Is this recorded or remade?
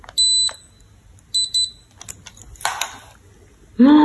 recorded